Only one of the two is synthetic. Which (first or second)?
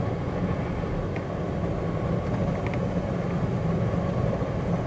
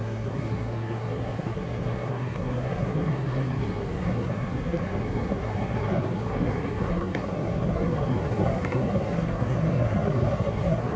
second